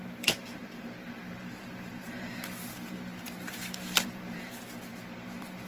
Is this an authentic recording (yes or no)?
no